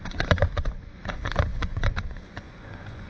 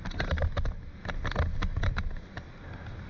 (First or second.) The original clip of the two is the second